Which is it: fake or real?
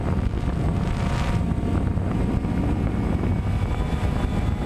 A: real